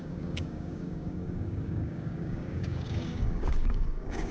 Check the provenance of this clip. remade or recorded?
remade